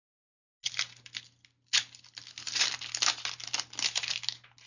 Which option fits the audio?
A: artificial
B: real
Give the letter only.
B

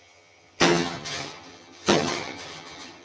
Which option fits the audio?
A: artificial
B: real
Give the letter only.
A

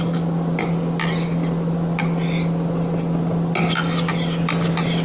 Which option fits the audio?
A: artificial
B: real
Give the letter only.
B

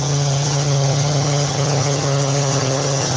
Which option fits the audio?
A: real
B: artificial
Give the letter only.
B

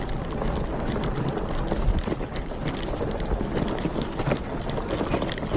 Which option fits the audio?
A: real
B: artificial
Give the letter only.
A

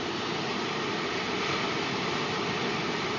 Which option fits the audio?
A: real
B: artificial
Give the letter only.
A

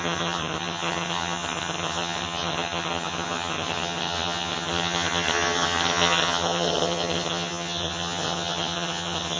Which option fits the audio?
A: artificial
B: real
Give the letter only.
A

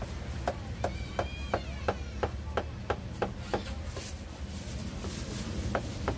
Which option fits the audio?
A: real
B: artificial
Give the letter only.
A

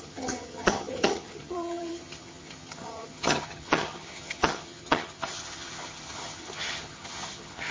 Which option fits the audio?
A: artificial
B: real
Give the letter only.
A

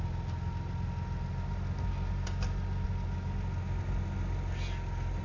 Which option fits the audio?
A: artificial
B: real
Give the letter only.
B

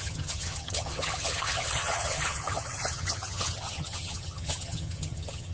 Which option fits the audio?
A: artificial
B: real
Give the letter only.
A